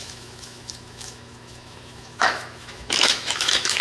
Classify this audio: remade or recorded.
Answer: remade